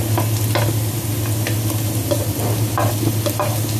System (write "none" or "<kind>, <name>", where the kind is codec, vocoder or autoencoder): none